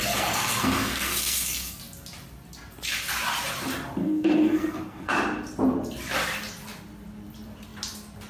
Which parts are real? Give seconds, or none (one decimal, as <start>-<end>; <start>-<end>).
1.8-4.0; 5.1-8.3